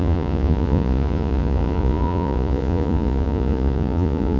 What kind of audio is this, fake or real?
fake